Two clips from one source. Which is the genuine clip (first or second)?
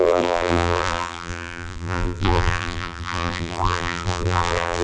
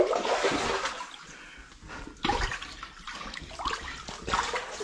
second